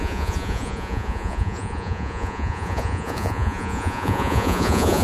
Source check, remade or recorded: remade